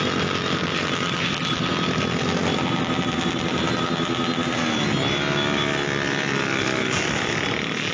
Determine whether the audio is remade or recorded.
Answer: recorded